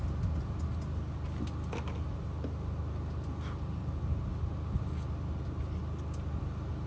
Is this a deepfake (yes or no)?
no